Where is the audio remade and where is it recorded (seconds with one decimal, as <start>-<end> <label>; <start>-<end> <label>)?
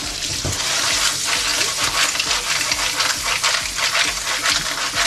0.0-0.6 remade; 0.6-5.1 recorded